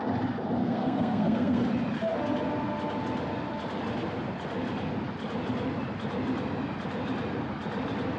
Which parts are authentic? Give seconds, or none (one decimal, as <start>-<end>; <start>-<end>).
0.0-0.6; 1.6-8.2